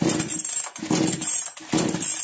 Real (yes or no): yes